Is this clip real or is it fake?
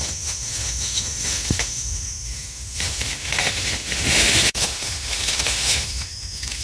fake